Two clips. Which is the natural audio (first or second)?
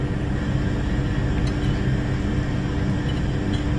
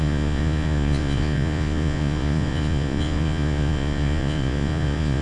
first